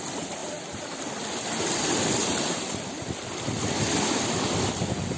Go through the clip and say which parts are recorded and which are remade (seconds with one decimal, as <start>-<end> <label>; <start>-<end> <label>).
0.0-5.2 recorded